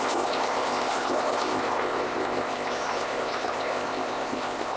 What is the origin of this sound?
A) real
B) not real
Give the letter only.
B